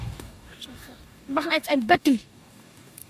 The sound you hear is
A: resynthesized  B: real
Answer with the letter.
A